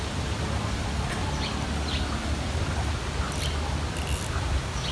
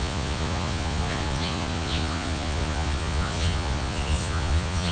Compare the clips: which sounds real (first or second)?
first